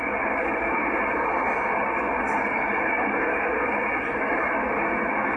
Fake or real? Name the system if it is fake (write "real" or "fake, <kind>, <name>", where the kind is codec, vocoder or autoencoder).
real